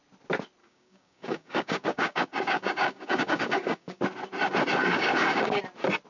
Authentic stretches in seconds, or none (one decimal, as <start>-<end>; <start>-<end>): 0.0-0.6; 4.0-4.8; 5.6-6.1